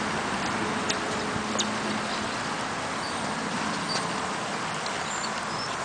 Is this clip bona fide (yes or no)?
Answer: yes